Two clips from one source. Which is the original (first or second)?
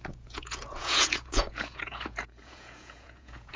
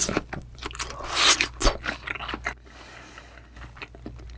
second